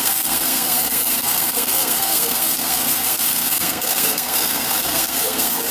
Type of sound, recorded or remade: remade